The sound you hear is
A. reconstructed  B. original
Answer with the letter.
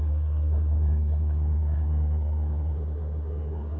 A